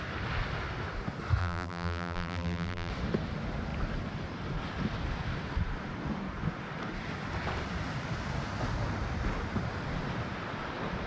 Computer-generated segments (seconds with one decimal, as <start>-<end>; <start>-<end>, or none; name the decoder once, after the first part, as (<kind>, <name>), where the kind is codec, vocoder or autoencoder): 1.4-2.9 (vocoder, BigVGAN v2)